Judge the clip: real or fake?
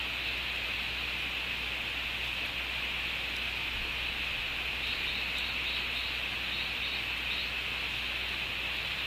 real